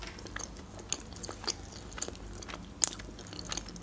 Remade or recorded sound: recorded